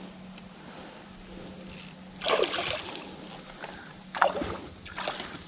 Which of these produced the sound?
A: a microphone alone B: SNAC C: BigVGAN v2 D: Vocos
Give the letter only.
A